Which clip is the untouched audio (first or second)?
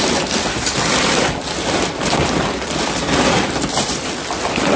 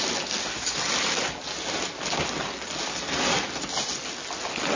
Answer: second